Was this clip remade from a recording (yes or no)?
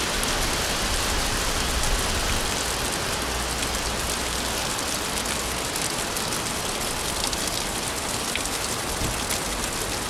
no